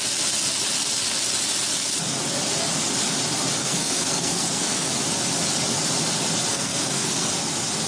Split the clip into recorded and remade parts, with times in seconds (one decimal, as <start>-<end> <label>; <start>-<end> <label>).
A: 0.0-3.6 recorded; 3.6-4.9 remade; 4.9-6.5 recorded; 6.5-7.3 remade; 7.3-7.9 recorded